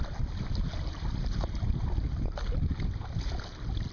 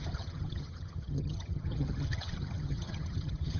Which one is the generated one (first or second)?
second